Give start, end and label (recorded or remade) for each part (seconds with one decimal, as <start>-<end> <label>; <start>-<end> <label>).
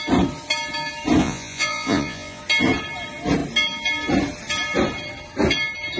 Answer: 0.0-1.2 recorded; 1.2-2.4 remade; 2.4-6.0 recorded